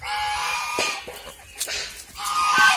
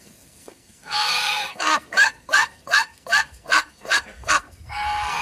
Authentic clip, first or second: first